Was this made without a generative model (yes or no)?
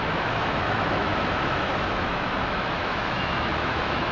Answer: no